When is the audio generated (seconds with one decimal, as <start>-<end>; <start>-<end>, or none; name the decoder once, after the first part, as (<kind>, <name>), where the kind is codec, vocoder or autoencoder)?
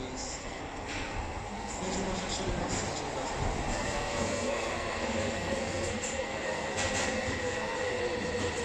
0.4-1.7 (codec, SNAC); 3.7-8.0